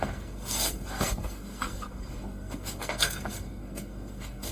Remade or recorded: remade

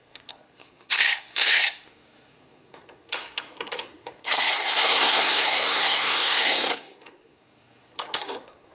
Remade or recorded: remade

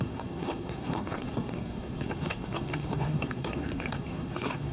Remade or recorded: remade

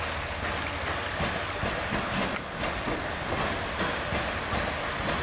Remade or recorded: recorded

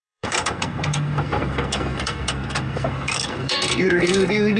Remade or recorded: remade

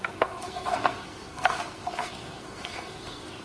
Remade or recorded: remade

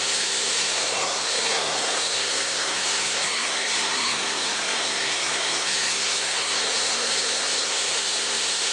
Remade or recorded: remade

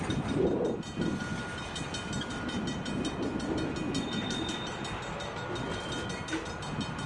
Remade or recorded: recorded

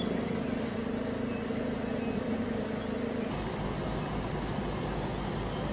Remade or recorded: recorded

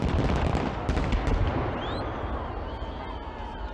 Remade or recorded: recorded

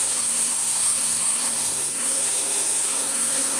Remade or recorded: remade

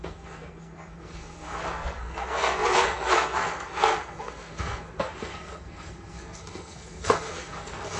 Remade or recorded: remade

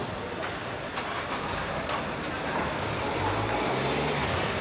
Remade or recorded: recorded